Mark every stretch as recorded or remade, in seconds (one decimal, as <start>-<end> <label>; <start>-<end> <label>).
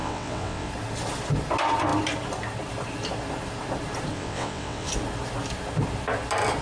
0.0-0.7 remade; 0.7-4.1 recorded; 4.1-4.9 remade; 4.9-6.6 recorded